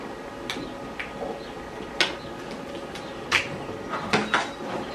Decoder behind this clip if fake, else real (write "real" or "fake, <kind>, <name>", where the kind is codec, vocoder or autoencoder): real